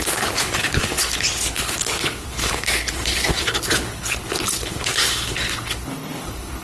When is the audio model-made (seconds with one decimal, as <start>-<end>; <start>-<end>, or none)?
0.0-6.6